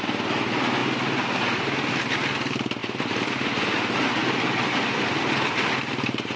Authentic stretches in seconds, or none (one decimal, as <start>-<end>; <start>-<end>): 0.0-2.8; 3.3-4.2